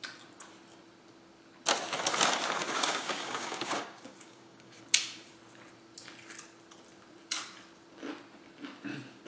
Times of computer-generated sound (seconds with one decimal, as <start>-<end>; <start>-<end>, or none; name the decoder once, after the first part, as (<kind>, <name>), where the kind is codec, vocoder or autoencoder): 2.6-4.8 (codec, DAC)